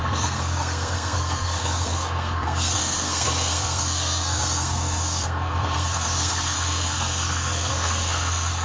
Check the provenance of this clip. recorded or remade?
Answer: remade